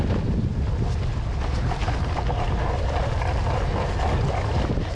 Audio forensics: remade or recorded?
recorded